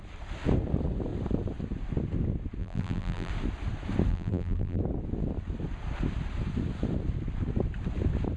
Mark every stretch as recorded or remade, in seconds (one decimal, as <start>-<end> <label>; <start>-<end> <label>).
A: 0.0-2.6 recorded; 2.6-3.3 remade; 3.3-4.1 recorded; 4.1-4.8 remade; 4.8-8.4 recorded